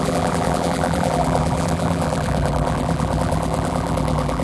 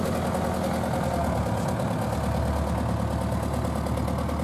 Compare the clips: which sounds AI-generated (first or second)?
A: first